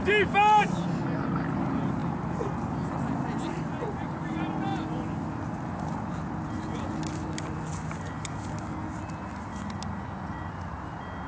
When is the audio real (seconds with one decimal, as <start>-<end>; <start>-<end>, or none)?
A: 0.0-11.3